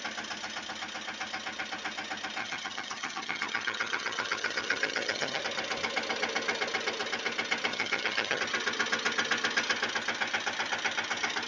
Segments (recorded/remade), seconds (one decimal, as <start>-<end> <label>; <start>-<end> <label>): 0.0-2.4 recorded; 2.4-5.4 remade; 5.4-7.7 recorded; 7.7-8.4 remade; 8.4-11.5 recorded